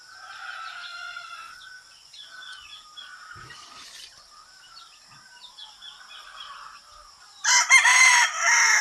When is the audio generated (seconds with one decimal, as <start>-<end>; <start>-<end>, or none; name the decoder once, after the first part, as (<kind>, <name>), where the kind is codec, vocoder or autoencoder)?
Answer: 0.9-2.8 (vocoder, Vocos)